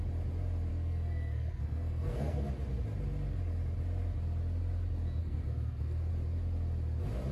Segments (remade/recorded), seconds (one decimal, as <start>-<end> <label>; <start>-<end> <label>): 0.0-0.7 recorded; 0.7-2.5 remade; 2.5-5.2 recorded; 5.2-6.1 remade; 6.1-7.3 recorded